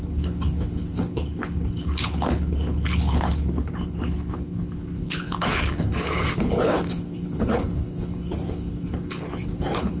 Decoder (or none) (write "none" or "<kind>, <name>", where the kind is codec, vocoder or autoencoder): codec, HILCodec